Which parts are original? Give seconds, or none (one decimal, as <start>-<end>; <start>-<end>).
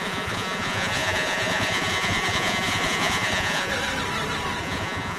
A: 3.7-4.6